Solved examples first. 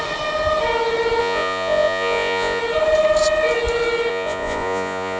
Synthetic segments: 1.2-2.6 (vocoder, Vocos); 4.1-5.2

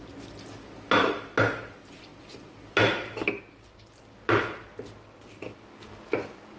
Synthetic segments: none